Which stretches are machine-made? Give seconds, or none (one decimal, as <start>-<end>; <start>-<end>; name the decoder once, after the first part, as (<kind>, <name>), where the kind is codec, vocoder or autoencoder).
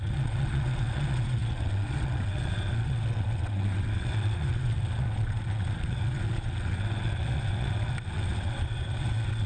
0.0-9.5 (vocoder, WaveNeXt)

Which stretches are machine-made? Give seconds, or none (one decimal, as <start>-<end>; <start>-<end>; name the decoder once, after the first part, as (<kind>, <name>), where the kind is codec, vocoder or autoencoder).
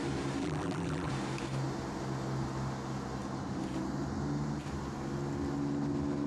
0.4-1.1 (vocoder, BigVGAN v2)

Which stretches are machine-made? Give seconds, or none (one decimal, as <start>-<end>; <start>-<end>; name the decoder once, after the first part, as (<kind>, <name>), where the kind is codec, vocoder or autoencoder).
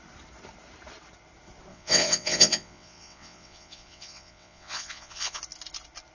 1.7-5.4 (vocoder, WaveNeXt)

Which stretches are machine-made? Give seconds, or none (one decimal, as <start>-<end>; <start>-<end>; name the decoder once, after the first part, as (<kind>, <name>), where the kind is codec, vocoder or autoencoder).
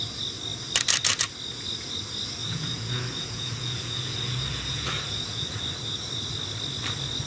2.4-5.5 (vocoder, Vocos)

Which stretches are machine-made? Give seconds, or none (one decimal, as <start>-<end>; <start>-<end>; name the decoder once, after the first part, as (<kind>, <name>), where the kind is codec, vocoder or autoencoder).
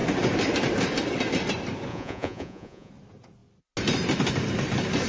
1.9-2.9 (vocoder, Vocos)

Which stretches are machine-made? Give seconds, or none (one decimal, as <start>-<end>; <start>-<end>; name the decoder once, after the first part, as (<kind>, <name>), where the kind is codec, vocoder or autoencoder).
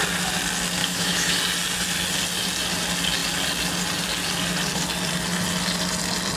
0.8-1.4 (autoencoder, DAC-VAE)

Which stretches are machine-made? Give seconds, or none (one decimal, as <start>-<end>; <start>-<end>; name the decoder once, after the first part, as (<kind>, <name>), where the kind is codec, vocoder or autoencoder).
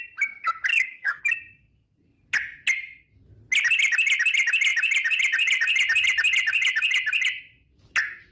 0.7-1.2 (codec, SNAC)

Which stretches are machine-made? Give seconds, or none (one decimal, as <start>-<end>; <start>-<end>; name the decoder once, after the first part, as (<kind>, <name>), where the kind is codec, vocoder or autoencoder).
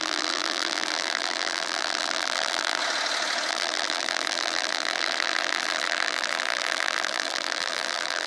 0.0-2.8 (vocoder, BigVGAN v2); 3.5-8.3